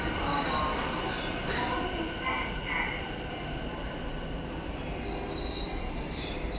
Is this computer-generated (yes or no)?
no